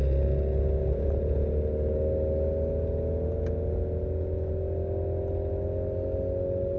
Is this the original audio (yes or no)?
yes